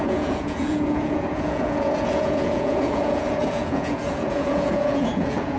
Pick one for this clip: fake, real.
fake